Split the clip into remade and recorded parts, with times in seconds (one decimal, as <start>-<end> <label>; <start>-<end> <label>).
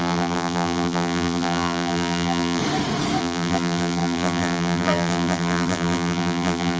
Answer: 0.0-2.6 remade; 2.6-3.2 recorded; 3.2-6.8 remade